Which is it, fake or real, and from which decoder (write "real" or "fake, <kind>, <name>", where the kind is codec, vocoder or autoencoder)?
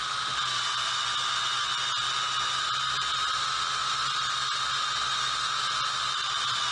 real